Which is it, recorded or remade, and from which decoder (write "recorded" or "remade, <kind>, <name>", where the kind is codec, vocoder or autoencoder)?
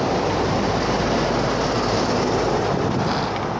recorded